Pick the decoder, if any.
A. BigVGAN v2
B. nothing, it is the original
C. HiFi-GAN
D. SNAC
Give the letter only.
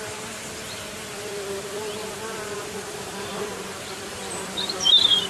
A